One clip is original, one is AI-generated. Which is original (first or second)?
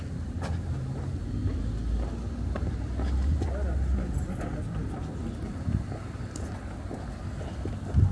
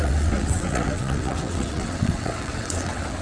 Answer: first